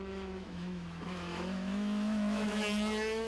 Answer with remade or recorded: remade